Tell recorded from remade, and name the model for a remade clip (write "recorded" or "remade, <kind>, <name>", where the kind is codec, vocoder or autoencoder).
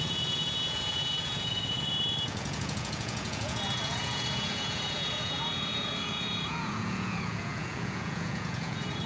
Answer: remade, vocoder, Vocos